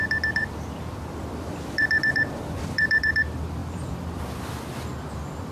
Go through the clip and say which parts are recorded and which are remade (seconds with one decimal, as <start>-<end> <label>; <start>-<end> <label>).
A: 0.0-0.4 recorded; 0.4-3.2 remade; 3.2-3.6 recorded; 3.6-4.2 remade; 4.2-5.5 recorded